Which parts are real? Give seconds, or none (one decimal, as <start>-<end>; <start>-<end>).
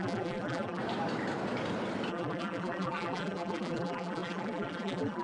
0.8-2.1